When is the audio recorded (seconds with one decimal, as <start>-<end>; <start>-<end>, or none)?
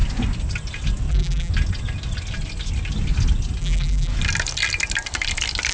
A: 0.0-1.1; 1.5-3.6; 4.1-5.7